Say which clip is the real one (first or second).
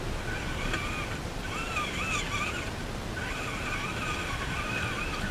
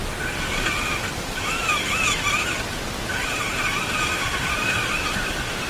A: first